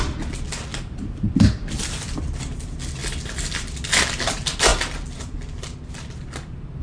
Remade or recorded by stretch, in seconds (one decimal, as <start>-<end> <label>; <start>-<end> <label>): 0.0-0.7 recorded; 0.7-2.2 remade; 2.2-3.0 recorded; 3.0-3.9 remade; 3.9-6.8 recorded